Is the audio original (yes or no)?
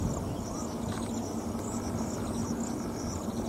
yes